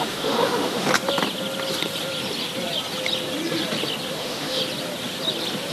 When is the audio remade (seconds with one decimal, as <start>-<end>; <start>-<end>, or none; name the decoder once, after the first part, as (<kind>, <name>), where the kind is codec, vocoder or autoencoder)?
0.0-0.9 (autoencoder, DAC-VAE); 4.1-4.6